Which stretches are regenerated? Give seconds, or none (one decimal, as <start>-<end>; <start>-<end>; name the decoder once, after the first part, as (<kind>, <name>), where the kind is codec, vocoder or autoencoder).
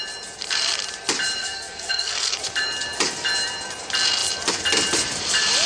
1.4-2.4 (codec, SNAC)